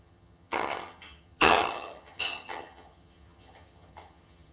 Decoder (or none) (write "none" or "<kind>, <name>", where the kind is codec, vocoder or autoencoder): vocoder, HiFi-GAN